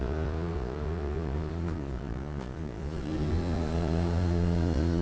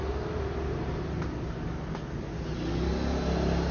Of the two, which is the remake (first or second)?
first